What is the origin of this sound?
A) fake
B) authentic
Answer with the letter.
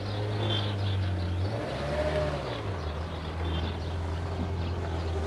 B